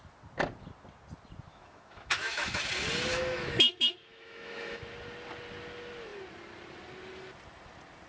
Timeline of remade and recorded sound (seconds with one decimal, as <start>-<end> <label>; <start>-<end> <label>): 0.0-1.5 recorded; 1.5-2.6 remade; 2.6-3.1 recorded; 3.1-4.8 remade; 4.8-8.1 recorded